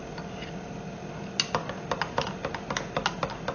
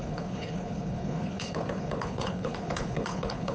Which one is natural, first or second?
first